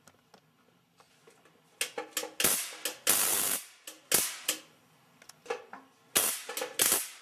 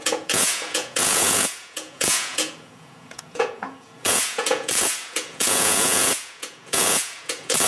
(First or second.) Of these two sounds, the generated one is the second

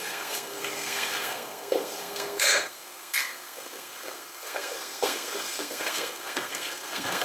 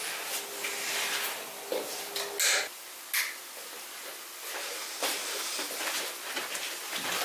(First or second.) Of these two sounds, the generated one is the first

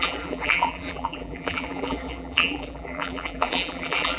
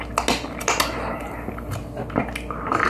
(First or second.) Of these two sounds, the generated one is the first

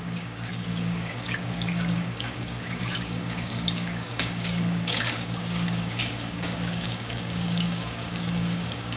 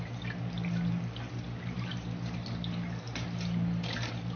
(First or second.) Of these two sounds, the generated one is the first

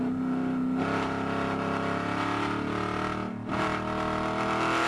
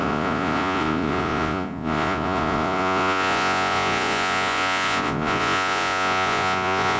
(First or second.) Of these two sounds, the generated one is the second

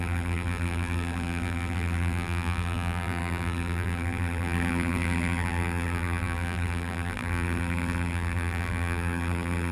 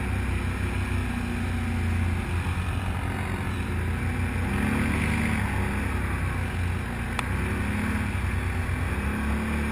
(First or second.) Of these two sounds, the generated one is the first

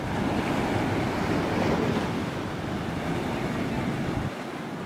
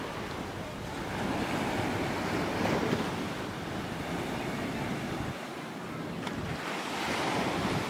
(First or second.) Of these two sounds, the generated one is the second